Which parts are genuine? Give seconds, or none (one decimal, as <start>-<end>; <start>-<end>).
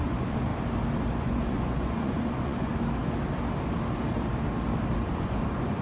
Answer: 0.5-1.2; 2.7-5.1